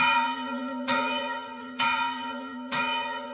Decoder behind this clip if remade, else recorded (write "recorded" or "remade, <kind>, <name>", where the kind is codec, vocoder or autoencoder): remade, vocoder, Vocos